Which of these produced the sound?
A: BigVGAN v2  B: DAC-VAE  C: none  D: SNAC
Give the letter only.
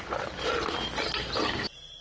C